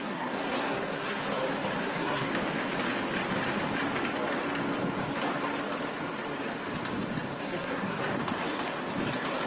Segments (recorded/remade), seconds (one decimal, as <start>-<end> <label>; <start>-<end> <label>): 0.0-1.2 remade; 1.2-1.8 recorded; 1.8-2.3 remade; 2.3-7.4 recorded; 7.4-8.1 remade; 8.1-9.5 recorded